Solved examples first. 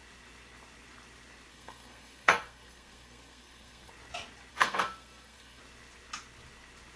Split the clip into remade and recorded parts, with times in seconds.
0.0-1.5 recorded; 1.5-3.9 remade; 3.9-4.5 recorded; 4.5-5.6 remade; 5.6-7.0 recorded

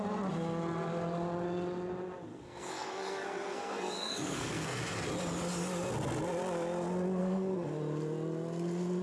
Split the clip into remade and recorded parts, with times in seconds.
0.0-2.3 recorded; 2.3-4.8 remade; 4.8-7.2 recorded; 7.2-7.8 remade; 7.8-9.0 recorded

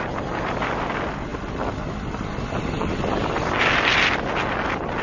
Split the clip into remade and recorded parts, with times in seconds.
0.0-5.0 recorded

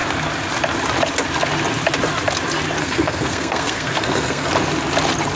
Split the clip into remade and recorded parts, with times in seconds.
0.0-2.8 recorded; 2.8-4.5 remade; 4.5-5.4 recorded

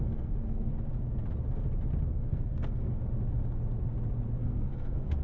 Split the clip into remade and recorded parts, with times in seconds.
0.0-0.7 remade; 0.7-2.1 recorded; 2.1-3.0 remade; 3.0-4.4 recorded; 4.4-5.2 remade

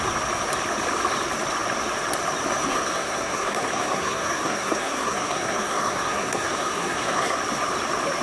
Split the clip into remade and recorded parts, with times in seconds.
0.0-2.7 recorded; 2.7-7.4 remade; 7.4-8.2 recorded